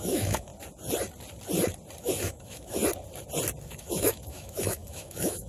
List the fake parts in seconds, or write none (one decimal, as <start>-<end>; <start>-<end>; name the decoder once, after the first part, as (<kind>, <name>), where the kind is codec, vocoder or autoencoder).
0.0-0.5 (autoencoder, DAC-VAE); 2.0-2.8; 3.7-5.5